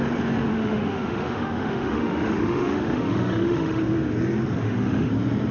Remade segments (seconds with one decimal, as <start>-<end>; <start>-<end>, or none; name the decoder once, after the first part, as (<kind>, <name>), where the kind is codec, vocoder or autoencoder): 0.5-3.8 (autoencoder, DAC-VAE); 4.6-5.1